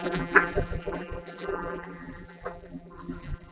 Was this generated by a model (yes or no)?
yes